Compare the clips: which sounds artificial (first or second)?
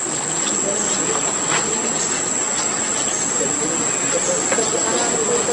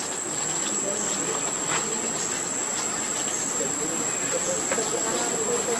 second